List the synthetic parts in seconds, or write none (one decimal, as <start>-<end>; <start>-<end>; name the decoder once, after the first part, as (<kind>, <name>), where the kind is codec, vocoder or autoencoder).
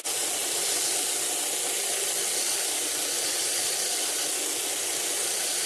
none